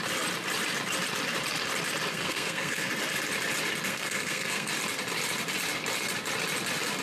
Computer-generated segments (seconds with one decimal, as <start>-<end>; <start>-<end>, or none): 2.1-2.9; 3.9-4.7